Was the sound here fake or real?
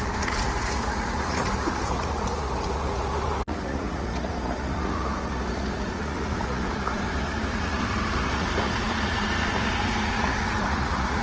fake